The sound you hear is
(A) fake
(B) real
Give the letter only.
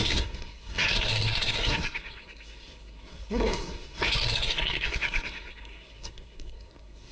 A